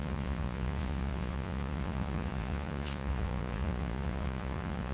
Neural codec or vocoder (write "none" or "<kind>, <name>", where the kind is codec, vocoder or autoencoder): vocoder, Vocos